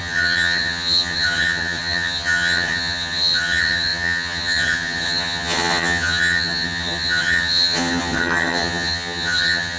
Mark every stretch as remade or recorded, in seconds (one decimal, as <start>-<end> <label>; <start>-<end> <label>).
0.0-9.8 remade